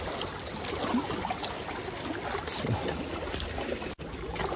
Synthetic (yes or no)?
no